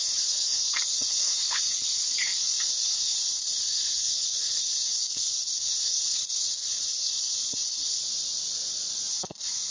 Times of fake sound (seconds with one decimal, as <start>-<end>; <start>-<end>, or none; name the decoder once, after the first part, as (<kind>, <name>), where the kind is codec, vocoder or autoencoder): 0.0-8.0 (codec, HILCodec); 9.1-9.7